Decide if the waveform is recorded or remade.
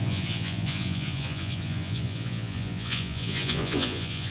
remade